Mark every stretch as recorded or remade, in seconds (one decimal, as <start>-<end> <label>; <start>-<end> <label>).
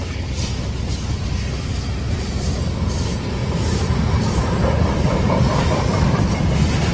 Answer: 0.0-3.4 recorded; 3.4-6.2 remade; 6.2-6.9 recorded